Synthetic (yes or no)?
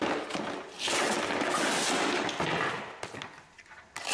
no